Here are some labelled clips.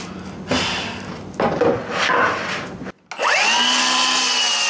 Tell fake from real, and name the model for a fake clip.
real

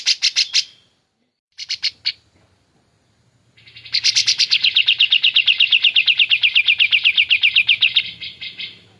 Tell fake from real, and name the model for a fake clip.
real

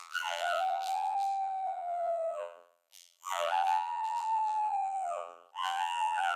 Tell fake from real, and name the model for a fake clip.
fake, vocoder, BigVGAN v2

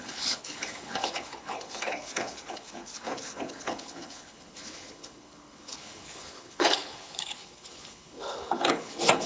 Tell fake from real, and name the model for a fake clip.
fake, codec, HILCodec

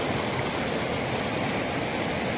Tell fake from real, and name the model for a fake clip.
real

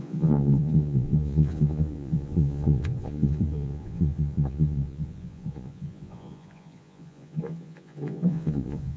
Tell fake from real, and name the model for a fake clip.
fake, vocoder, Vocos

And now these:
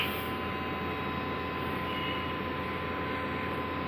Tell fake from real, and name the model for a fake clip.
real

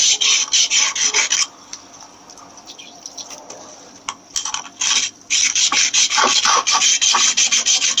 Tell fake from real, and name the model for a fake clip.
real